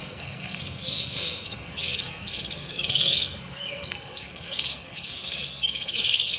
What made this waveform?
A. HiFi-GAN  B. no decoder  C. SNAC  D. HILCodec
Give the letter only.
C